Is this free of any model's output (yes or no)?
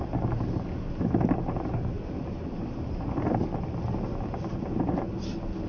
yes